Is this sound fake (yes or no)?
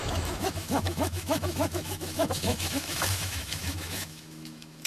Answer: yes